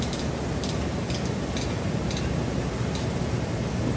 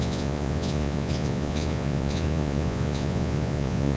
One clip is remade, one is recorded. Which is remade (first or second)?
second